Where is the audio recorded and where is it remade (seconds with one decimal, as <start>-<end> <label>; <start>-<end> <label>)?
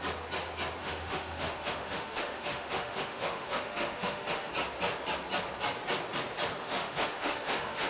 0.0-0.8 recorded; 0.8-4.5 remade; 4.5-6.6 recorded; 6.6-7.9 remade